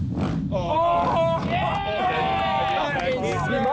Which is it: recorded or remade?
recorded